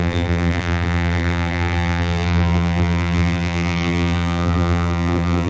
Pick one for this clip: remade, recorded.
remade